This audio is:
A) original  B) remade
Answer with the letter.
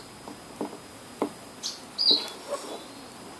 A